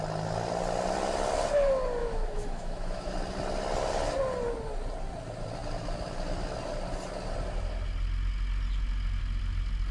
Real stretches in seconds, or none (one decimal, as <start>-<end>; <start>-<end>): 0.0-2.0; 3.1-9.9